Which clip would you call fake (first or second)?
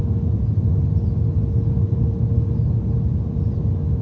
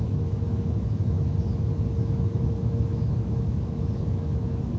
second